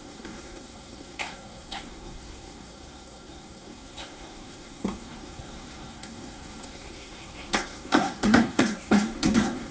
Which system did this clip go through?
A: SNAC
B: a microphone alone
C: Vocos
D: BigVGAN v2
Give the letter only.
A